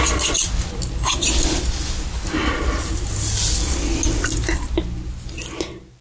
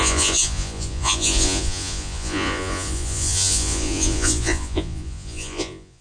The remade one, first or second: second